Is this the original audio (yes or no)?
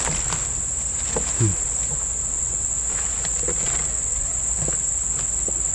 yes